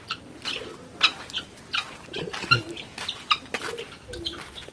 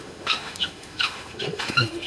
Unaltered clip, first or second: first